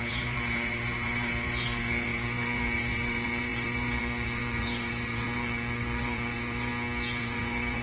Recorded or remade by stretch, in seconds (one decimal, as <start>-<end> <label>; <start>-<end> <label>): 0.0-6.7 remade; 6.7-7.2 recorded; 7.2-7.8 remade